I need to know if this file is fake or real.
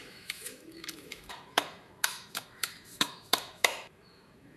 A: fake